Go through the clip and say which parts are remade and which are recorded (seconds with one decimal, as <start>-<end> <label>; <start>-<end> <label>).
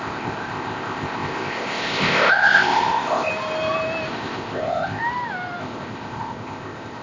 0.0-3.3 remade; 3.3-4.1 recorded; 4.1-5.0 remade; 5.0-5.6 recorded; 5.6-7.0 remade